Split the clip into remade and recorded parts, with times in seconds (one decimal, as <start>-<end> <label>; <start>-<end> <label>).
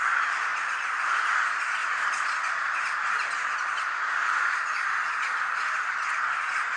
0.0-6.8 recorded